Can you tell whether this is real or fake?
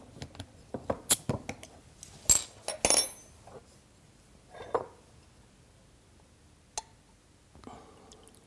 real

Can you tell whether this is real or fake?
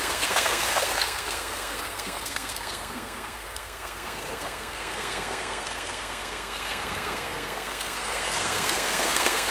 fake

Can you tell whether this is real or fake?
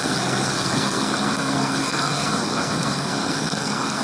fake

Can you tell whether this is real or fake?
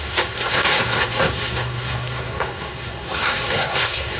fake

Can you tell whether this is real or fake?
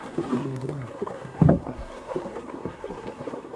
fake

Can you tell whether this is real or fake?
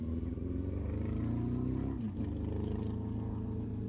real